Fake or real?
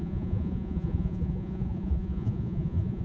fake